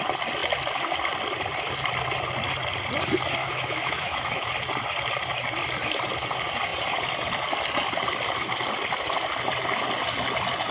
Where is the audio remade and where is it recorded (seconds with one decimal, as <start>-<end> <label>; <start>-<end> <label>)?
0.0-3.4 recorded; 3.4-4.5 remade; 4.5-10.7 recorded